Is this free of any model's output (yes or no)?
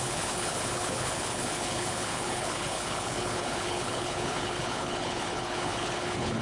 no